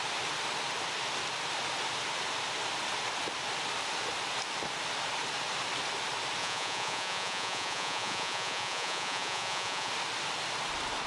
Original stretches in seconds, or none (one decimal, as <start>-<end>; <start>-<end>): 0.0-6.4; 9.9-11.1